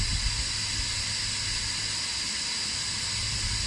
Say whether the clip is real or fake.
real